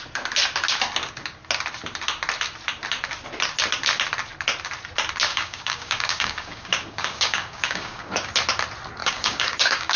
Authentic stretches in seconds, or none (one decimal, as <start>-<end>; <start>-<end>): 0.0-5.3; 8.3-9.0